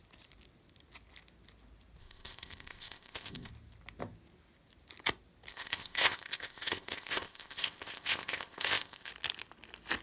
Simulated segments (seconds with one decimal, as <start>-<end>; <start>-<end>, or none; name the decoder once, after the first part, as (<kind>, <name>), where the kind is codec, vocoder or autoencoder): 2.0-3.5 (codec, ZipCodec); 5.5-9.1